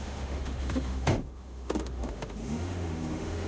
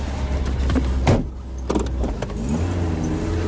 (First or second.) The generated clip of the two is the first